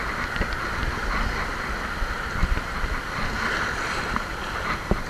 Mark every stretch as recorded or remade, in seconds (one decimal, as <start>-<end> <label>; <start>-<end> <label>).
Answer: 0.0-5.1 recorded